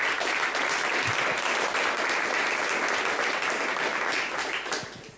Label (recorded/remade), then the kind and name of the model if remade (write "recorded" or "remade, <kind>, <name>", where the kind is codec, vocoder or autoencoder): recorded